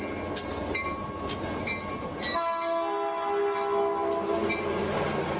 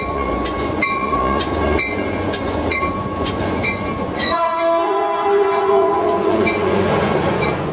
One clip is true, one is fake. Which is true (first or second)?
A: first